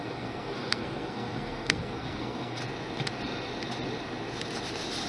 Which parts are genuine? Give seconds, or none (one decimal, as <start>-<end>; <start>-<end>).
2.6-5.1

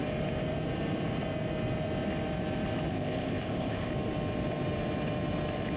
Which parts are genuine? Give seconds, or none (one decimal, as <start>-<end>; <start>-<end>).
0.0-2.9; 3.9-5.8

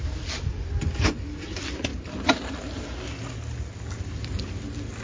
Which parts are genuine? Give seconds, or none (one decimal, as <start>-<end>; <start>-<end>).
0.0-5.0

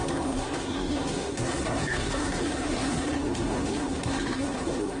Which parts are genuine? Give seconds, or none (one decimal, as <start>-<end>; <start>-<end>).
none